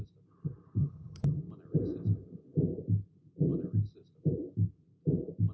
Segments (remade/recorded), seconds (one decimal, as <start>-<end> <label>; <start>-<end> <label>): 0.0-0.8 recorded; 0.8-1.4 remade; 1.4-5.5 recorded